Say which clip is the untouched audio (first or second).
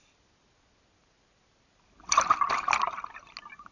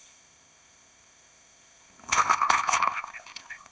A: first